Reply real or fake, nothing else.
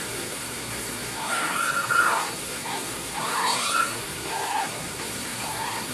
fake